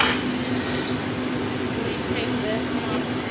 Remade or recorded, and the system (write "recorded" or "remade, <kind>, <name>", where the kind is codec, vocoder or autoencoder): recorded